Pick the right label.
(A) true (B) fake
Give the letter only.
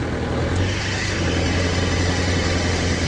A